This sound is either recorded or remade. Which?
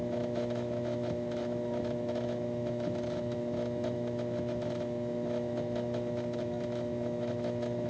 remade